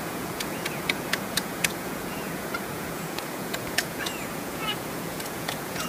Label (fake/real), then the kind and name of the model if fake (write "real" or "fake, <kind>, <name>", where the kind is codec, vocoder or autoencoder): fake, vocoder, Vocos